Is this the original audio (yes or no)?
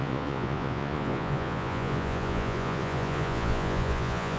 no